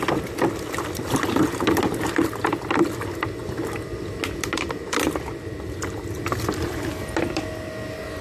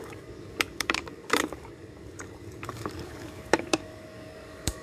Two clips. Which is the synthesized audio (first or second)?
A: second